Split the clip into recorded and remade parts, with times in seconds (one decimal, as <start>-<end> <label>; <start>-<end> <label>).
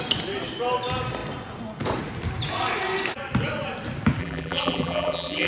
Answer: 0.0-4.2 recorded; 4.2-5.5 remade